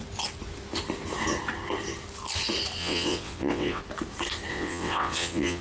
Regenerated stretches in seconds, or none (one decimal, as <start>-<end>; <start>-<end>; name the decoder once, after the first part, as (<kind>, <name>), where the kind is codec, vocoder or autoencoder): 2.8-3.8 (vocoder, WaveNeXt); 4.5-5.6